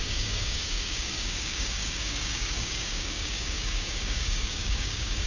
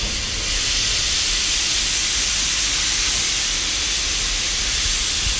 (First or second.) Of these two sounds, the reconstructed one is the first